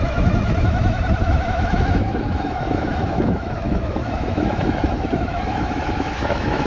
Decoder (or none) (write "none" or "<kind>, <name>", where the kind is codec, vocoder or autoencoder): autoencoder, DAC-VAE